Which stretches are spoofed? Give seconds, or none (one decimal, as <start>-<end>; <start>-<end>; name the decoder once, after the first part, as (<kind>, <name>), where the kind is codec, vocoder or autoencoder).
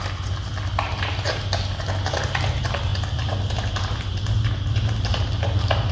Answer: none